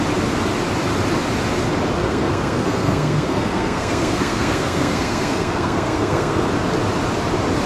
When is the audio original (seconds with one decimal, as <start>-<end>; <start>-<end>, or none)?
0.0-2.0; 6.5-7.7